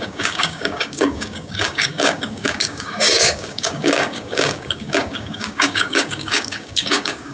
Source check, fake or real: fake